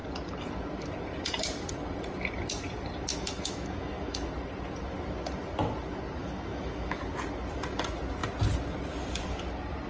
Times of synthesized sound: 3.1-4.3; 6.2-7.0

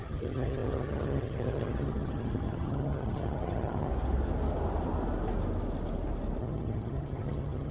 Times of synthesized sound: 0.0-3.9; 6.4-7.7